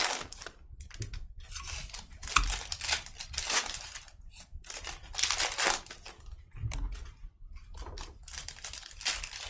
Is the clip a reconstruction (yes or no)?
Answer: no